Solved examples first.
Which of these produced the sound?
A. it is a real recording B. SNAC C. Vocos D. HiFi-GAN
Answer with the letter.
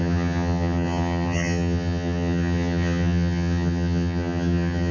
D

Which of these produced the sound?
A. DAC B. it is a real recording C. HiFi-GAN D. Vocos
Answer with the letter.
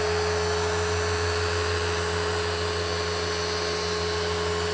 B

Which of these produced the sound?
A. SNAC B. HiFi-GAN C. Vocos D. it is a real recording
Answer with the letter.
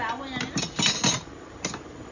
D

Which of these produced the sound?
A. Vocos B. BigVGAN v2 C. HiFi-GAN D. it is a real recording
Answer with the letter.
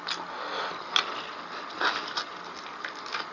D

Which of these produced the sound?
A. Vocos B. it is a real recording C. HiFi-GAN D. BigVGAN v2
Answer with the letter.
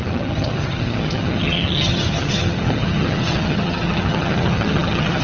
C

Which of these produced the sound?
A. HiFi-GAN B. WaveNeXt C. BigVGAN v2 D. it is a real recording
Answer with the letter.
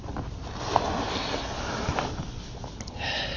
D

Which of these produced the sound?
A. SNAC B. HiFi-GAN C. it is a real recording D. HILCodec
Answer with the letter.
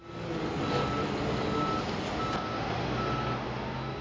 C